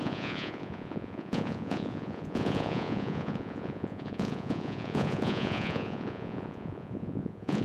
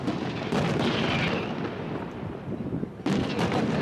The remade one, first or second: first